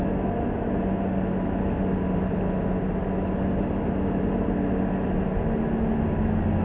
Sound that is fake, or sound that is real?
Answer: real